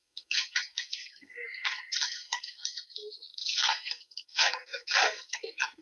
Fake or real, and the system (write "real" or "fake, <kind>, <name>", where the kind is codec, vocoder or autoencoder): fake, codec, SNAC